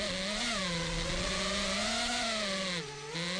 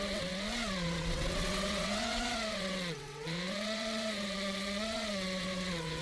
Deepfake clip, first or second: second